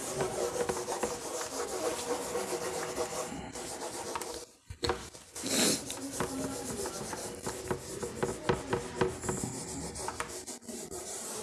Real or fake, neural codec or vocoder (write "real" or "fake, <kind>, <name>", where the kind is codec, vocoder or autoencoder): real